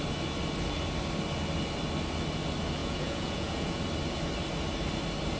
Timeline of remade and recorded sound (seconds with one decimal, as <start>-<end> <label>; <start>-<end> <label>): 0.0-2.8 recorded; 2.8-3.8 remade; 3.8-5.4 recorded